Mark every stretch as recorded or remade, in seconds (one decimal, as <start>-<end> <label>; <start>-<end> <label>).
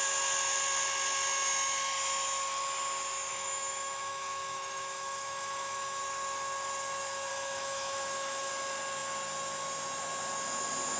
0.0-3.3 recorded; 3.3-6.0 remade; 6.0-7.3 recorded; 7.3-8.5 remade; 8.5-11.0 recorded